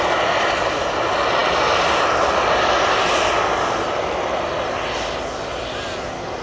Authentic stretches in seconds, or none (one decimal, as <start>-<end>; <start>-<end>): 0.0-6.4